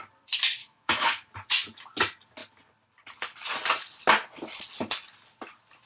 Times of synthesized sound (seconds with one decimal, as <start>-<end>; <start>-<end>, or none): 0.6-1.3